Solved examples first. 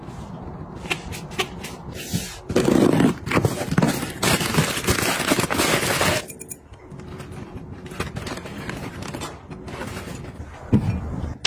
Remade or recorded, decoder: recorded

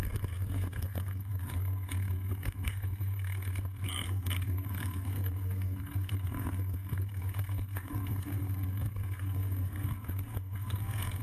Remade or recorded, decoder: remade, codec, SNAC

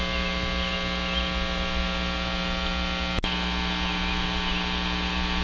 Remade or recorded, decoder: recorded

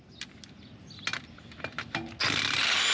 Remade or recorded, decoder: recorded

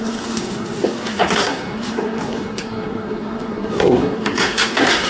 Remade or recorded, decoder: remade, codec, SNAC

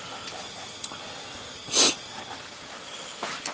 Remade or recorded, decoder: remade, vocoder, BigVGAN v2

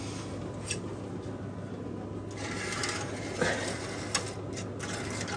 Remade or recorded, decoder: recorded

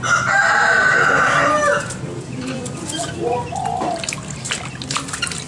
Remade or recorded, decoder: recorded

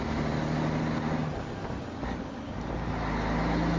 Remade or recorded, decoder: recorded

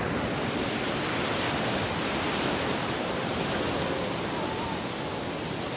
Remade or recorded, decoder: recorded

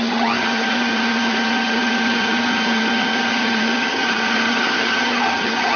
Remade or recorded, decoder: remade, vocoder, HiFi-GAN